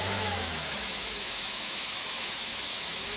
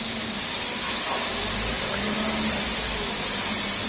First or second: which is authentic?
second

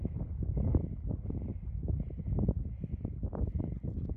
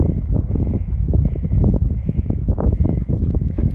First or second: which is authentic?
first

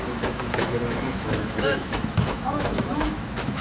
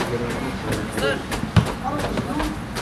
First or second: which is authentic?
second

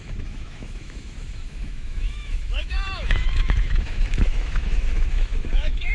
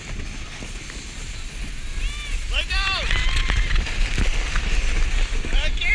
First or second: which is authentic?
second